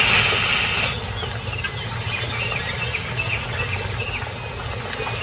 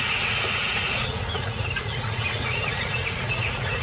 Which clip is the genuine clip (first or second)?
first